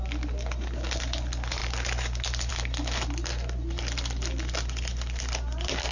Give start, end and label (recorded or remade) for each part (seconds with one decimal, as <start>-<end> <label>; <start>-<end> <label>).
0.0-5.9 recorded